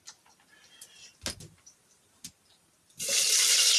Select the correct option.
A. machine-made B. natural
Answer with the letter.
B